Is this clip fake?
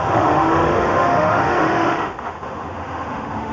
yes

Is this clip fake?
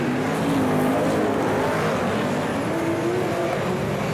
no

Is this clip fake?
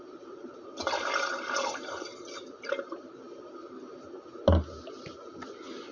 no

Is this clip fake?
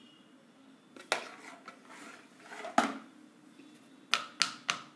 no